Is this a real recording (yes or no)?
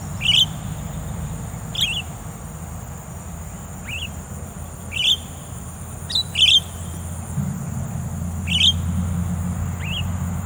yes